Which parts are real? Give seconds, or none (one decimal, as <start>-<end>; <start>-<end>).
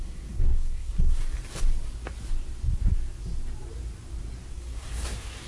1.2-4.5